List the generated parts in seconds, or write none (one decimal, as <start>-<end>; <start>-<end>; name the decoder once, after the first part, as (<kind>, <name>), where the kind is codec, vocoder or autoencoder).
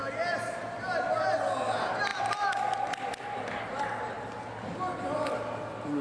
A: none